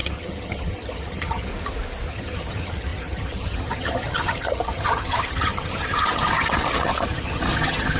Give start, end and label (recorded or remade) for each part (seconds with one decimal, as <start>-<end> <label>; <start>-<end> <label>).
0.0-1.5 remade; 1.5-2.1 recorded; 2.1-8.0 remade